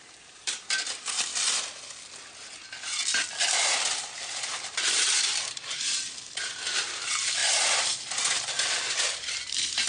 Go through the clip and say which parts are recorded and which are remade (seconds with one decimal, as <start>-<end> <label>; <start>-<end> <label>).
0.0-1.3 remade; 1.3-3.5 recorded; 3.5-9.9 remade